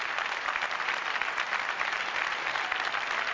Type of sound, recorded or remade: recorded